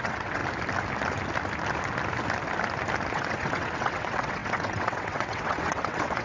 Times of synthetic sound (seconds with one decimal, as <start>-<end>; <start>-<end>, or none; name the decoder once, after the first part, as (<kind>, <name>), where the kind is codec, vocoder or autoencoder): 0.0-0.4 (vocoder, WaveNeXt); 3.1-6.2